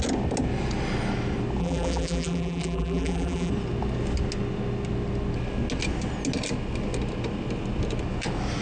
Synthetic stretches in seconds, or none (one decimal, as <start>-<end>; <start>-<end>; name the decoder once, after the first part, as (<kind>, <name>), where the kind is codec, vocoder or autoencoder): 1.6-3.5 (vocoder, BigVGAN v2)